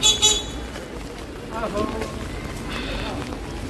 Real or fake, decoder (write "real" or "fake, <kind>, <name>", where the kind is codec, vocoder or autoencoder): real